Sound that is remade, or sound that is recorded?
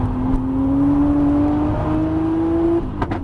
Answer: recorded